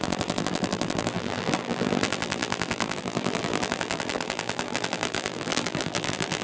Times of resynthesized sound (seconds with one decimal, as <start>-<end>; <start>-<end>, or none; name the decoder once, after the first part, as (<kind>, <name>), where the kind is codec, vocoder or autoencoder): 0.0-6.4 (vocoder, BigVGAN v2)